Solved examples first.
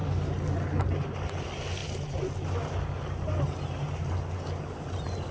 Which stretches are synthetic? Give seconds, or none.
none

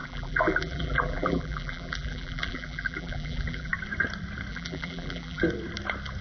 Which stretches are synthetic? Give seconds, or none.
0.0-3.7 (vocoder, BigVGAN v2); 4.5-5.4

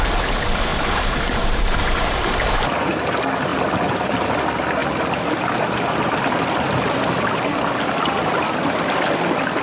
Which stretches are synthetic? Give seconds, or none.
0.7-2.3 (vocoder, BigVGAN v2); 3.5-4.1

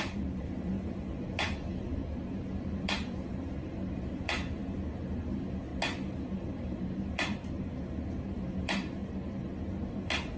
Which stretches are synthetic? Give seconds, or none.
0.0-4.6 (vocoder, BigVGAN v2); 5.3-5.7; 6.5-9.0; 9.9-10.4

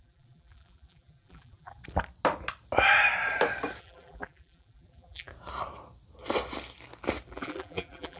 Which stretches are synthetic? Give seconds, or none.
0.0-1.8 (vocoder, BigVGAN v2); 3.8-5.3; 7.3-8.2

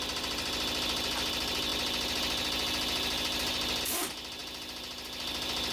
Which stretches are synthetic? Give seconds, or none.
none

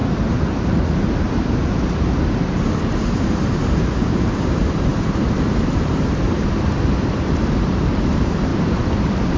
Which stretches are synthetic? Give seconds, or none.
0.0-8.5 (vocoder, BigVGAN v2); 9.0-9.4